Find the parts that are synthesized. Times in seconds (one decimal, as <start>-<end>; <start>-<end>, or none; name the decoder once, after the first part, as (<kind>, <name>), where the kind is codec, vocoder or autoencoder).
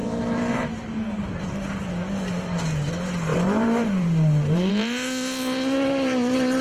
0.0-1.4 (vocoder, BigVGAN v2); 3.3-4.7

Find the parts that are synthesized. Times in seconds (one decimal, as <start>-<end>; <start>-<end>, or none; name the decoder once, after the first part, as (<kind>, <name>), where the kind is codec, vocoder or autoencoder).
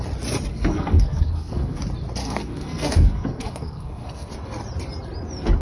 0.5-1.8 (codec, SNAC); 2.2-4.3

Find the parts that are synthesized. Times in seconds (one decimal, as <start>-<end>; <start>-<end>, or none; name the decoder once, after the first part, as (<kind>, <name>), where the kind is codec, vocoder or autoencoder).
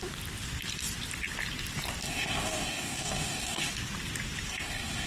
2.0-3.7 (codec, DAC); 4.5-5.1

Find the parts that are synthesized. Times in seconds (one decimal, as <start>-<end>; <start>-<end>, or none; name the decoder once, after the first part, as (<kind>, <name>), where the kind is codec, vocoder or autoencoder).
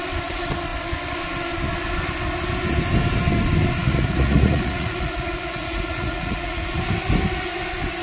3.8-6.8 (vocoder, Vocos)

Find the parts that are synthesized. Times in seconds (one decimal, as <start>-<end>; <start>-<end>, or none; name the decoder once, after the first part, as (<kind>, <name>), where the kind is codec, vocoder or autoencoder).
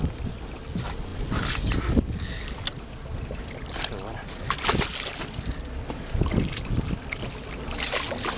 none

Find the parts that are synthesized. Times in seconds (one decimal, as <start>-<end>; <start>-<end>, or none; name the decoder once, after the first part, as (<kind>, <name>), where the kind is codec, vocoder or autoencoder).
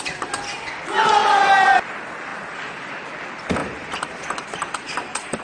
2.3-2.9 (vocoder, BigVGAN v2); 3.6-5.4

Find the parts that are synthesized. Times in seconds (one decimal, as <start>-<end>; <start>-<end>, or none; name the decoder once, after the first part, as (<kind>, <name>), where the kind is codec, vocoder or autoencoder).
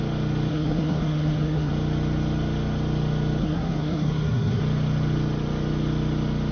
0.5-1.7 (codec, SNAC); 3.4-4.6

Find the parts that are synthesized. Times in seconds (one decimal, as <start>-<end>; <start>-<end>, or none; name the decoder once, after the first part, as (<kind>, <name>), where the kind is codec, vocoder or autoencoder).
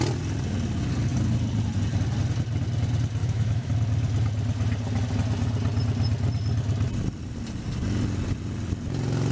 3.2-3.7 (autoencoder, DAC-VAE)